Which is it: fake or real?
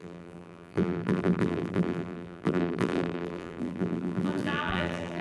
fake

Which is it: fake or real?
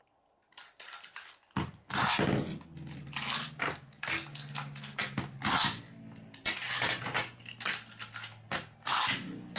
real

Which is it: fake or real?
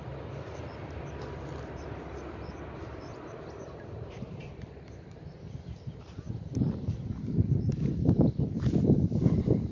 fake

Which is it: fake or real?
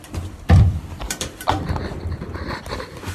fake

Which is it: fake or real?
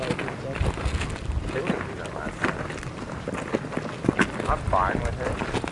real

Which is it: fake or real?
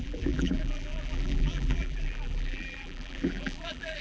fake